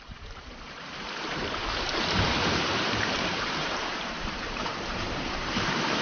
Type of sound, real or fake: fake